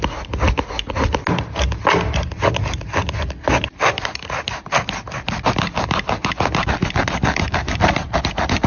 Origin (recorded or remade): recorded